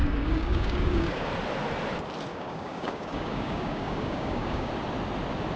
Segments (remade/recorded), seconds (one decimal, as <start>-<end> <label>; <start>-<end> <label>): 0.0-1.3 remade; 1.3-2.3 recorded; 2.3-4.7 remade; 4.7-5.6 recorded